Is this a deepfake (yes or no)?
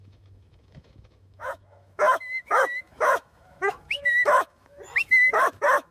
yes